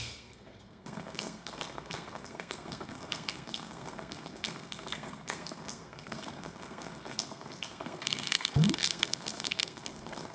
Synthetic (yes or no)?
yes